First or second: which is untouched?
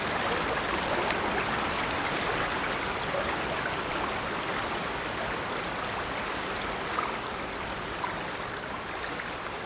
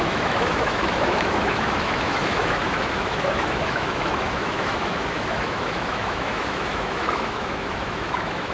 first